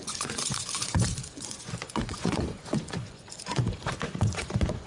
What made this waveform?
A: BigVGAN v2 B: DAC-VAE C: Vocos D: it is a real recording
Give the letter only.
C